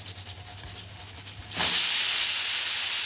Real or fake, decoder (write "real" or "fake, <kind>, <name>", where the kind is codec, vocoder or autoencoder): real